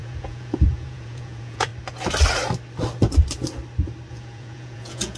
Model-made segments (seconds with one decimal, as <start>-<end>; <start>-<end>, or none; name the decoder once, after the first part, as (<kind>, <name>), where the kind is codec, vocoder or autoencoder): 0.0-1.7 (vocoder, Vocos); 4.1-5.2